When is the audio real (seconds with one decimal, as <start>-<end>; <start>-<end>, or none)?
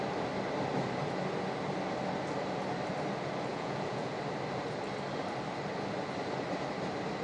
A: 0.0-3.5; 4.2-7.2